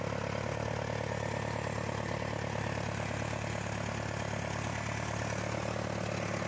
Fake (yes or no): no